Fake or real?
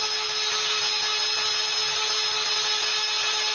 real